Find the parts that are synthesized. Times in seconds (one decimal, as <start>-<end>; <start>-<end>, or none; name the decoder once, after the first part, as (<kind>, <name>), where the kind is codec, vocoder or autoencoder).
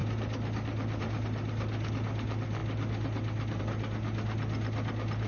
none